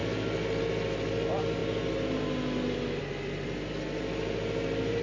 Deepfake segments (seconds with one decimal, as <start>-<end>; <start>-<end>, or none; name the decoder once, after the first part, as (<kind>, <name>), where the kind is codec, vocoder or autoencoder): none